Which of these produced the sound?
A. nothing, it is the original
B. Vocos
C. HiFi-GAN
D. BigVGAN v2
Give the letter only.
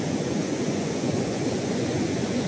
B